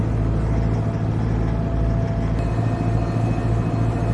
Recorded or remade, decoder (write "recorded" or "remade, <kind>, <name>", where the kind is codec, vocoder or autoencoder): recorded